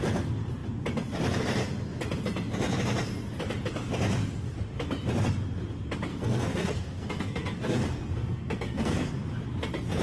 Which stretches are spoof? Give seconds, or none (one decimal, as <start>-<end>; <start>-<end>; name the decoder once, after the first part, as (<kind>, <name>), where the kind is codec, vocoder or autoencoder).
6.1-9.1 (codec, SNAC)